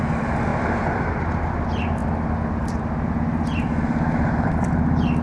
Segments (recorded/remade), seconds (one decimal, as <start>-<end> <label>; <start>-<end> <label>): 0.0-5.2 recorded